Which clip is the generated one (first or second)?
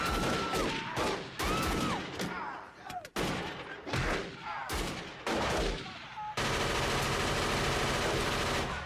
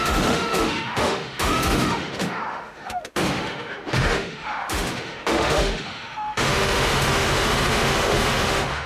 second